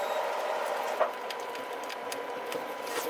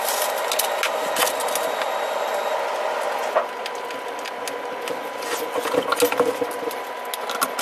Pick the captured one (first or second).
second